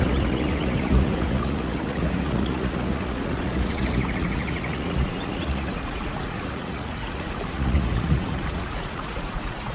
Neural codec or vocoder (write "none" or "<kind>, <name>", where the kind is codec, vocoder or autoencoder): vocoder, Vocos